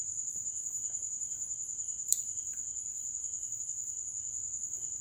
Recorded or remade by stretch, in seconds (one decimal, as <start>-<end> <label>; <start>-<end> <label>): 0.0-0.5 recorded; 0.5-1.2 remade; 1.2-5.0 recorded